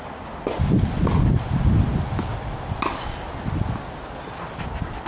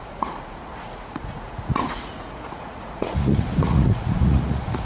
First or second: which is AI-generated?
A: second